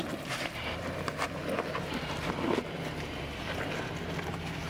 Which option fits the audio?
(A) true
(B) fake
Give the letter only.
A